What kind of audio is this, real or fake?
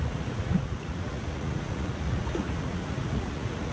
fake